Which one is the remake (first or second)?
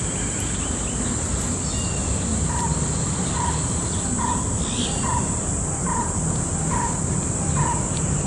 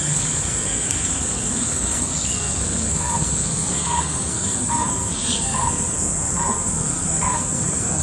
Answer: second